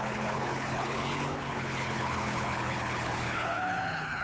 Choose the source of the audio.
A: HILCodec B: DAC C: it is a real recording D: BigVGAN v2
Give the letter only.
A